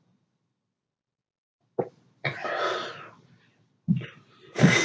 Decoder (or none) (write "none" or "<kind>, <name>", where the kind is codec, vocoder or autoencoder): none